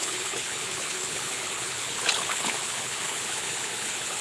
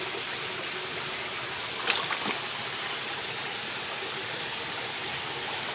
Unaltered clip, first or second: second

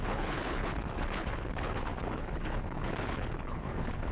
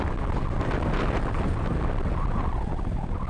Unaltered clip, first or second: second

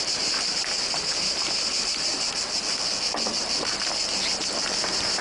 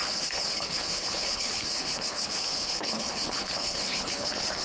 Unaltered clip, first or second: first